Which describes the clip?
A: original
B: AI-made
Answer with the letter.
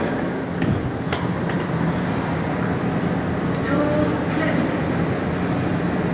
A